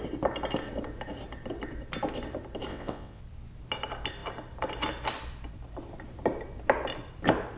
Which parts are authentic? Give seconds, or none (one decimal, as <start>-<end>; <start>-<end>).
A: 0.0-2.7; 3.2-7.6